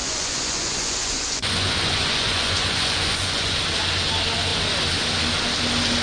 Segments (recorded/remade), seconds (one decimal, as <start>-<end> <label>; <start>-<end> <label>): 0.0-3.6 remade; 3.6-6.0 recorded

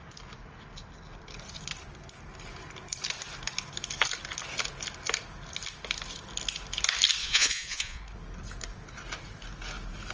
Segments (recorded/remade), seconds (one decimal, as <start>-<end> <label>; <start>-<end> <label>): 0.0-7.2 recorded; 7.2-8.0 remade; 8.0-10.1 recorded